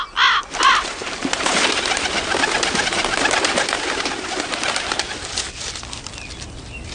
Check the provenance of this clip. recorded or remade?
recorded